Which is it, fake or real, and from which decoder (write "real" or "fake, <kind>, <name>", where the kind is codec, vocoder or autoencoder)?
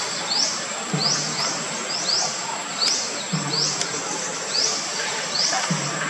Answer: fake, vocoder, BigVGAN v2